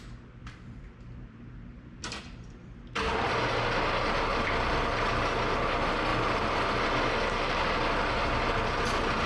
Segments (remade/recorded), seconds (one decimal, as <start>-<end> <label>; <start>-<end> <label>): 0.0-0.4 recorded; 0.4-3.6 remade; 3.6-4.3 recorded; 4.3-5.0 remade; 5.0-9.3 recorded